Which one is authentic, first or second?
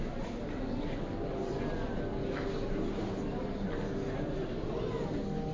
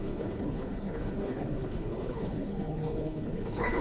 first